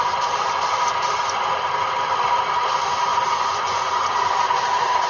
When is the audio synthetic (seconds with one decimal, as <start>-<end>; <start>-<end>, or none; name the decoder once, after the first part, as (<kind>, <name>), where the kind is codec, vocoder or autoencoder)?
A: 3.1-4.2 (vocoder, Vocos)